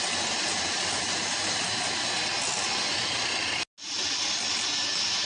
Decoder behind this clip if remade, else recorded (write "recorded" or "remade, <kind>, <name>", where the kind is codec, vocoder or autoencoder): recorded